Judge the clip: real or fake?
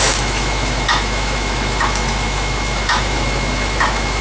fake